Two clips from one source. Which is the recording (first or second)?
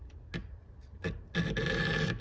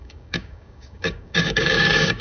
first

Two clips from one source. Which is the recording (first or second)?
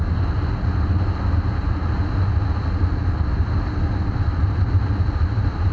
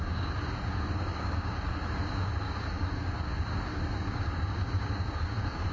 first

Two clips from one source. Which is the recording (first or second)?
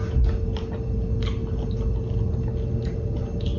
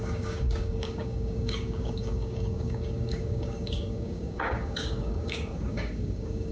first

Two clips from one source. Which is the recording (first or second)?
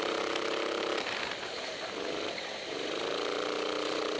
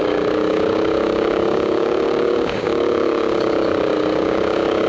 first